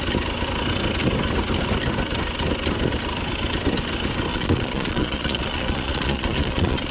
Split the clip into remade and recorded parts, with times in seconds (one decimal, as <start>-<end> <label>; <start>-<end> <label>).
0.0-4.3 recorded; 4.3-6.9 remade